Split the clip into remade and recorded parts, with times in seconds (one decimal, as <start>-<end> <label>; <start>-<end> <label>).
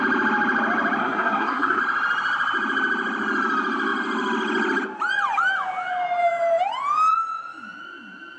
0.0-1.0 recorded; 1.0-1.8 remade; 1.8-8.4 recorded